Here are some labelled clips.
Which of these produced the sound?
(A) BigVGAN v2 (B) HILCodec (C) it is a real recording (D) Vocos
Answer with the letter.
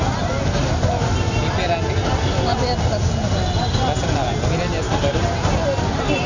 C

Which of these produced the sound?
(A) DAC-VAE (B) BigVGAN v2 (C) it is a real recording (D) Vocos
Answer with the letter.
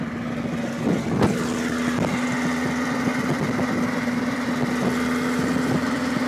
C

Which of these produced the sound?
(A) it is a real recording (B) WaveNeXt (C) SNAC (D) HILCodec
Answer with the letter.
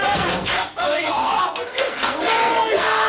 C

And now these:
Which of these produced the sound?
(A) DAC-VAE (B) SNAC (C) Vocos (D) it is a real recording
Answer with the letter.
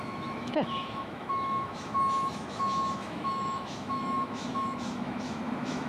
A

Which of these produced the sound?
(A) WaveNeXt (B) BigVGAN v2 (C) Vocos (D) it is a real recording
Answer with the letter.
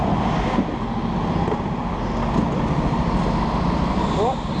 D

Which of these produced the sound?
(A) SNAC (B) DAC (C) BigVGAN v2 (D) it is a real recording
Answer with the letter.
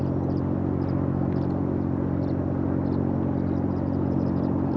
D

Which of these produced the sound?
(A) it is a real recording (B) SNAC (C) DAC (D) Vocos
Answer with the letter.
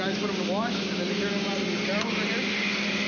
A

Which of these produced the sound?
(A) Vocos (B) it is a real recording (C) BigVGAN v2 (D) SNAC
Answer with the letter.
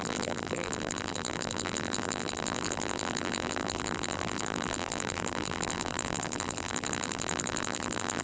C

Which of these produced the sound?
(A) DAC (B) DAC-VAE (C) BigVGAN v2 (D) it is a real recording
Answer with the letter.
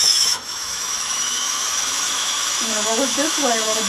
B